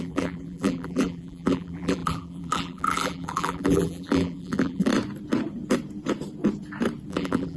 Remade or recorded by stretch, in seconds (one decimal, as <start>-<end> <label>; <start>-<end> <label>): 0.0-4.9 remade; 4.9-7.1 recorded; 7.1-7.6 remade